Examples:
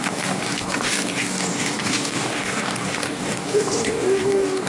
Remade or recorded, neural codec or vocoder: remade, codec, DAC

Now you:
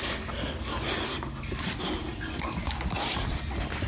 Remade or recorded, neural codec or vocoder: recorded